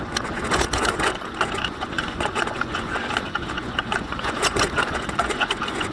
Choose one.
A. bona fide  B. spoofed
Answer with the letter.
B